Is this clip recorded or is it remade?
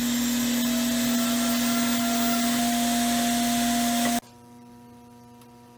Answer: recorded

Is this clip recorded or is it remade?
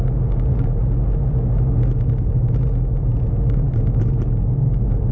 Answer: recorded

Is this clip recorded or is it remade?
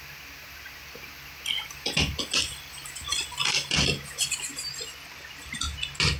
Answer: recorded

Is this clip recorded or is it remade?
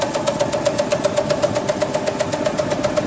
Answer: recorded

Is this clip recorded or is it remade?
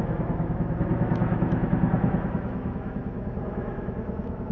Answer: remade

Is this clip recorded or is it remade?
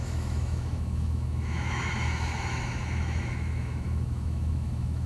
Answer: remade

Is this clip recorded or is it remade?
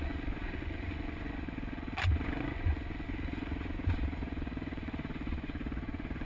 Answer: remade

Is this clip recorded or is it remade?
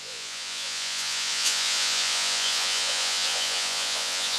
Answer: remade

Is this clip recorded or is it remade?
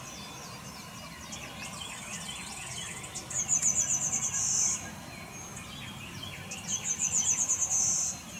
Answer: recorded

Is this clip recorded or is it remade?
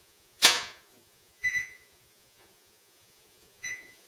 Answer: remade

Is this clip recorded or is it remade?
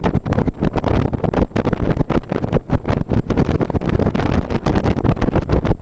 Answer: recorded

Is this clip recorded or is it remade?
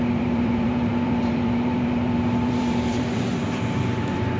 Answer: remade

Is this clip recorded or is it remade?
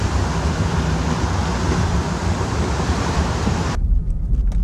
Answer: recorded